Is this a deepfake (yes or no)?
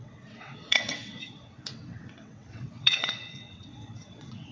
yes